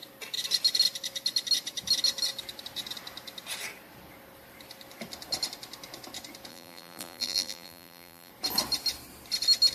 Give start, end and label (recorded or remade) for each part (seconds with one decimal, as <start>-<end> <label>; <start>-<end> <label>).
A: 0.0-6.5 recorded; 6.5-8.3 remade; 8.3-9.7 recorded